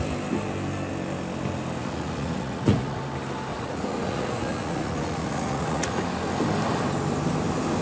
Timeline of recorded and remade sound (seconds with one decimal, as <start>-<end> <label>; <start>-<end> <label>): 0.0-1.8 recorded; 1.8-3.0 remade; 3.0-3.5 recorded; 3.5-6.0 remade; 6.0-7.8 recorded